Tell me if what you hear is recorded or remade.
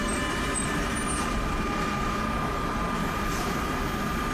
recorded